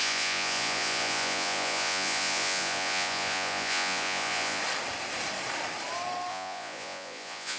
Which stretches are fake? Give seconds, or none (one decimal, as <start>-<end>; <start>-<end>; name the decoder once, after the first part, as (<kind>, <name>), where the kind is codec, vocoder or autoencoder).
0.0-4.6 (vocoder, Vocos); 6.3-7.6